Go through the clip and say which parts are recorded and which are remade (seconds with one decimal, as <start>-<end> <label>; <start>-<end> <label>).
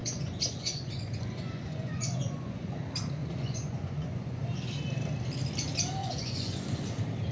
0.0-2.8 remade; 2.8-3.2 recorded; 3.2-4.4 remade; 4.4-6.0 recorded; 6.0-6.8 remade; 6.8-7.3 recorded